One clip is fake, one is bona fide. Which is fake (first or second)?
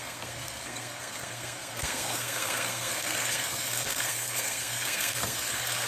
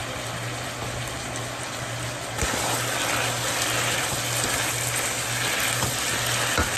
first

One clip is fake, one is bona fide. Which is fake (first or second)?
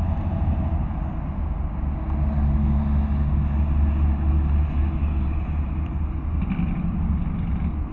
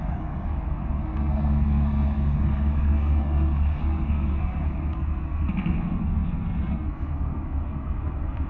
second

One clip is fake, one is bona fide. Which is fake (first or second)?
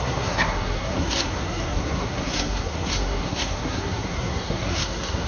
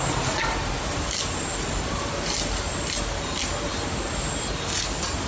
first